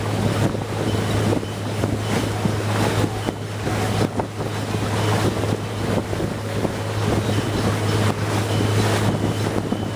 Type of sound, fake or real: real